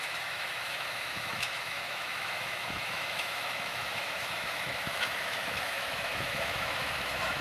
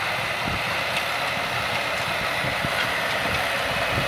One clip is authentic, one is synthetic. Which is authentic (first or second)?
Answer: second